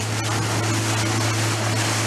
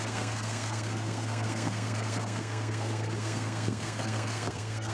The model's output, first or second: second